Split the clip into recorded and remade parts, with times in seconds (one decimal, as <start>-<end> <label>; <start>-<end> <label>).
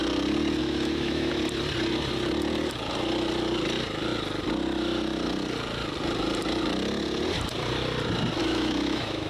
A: 0.0-0.6 recorded; 0.6-1.3 remade; 1.3-8.4 recorded; 8.4-9.3 remade